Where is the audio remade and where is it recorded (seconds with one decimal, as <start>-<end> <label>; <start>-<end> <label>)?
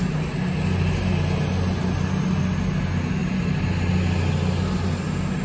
0.0-3.2 recorded; 3.2-3.9 remade; 3.9-5.4 recorded